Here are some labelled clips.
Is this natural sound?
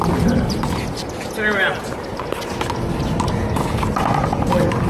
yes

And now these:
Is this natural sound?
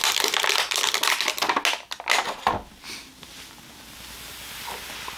yes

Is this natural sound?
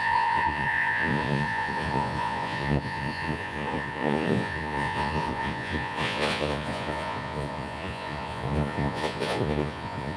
no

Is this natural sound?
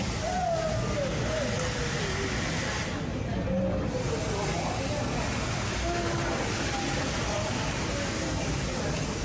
yes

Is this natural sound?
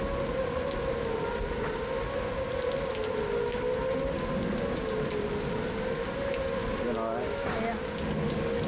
yes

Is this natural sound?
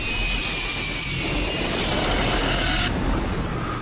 yes